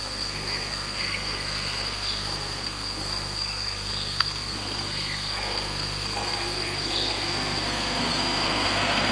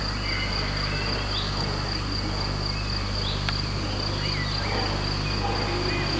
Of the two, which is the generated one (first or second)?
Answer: first